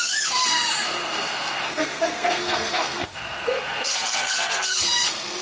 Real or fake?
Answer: fake